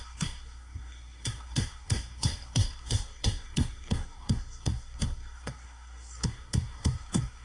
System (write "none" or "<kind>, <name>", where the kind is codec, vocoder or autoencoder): codec, SNAC